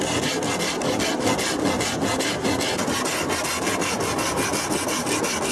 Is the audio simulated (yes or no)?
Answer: no